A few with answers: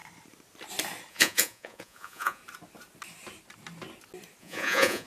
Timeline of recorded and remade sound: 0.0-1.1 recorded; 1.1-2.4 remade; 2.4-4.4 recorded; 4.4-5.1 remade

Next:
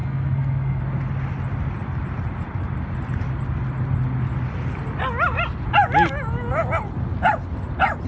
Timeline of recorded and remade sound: 0.0-0.8 remade; 0.8-8.1 recorded

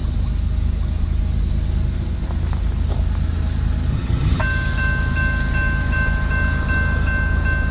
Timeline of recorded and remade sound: 0.0-3.9 recorded; 3.9-4.4 remade; 4.4-7.7 recorded

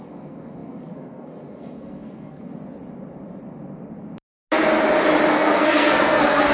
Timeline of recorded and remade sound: 0.0-2.5 remade; 2.5-5.3 recorded; 5.3-6.5 remade